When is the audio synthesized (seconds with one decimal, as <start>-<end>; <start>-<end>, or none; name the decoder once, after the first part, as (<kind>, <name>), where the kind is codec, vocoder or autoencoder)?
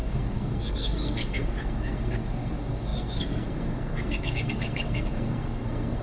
0.0-6.0 (codec, SNAC)